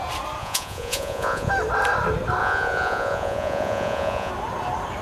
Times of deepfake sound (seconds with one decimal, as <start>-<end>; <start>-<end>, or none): 0.4-1.5; 2.4-4.3